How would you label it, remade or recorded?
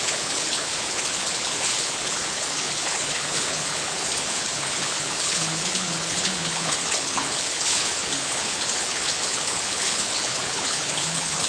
remade